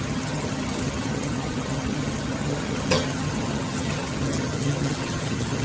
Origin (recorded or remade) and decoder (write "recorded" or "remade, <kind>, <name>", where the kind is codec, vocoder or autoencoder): remade, vocoder, HiFi-GAN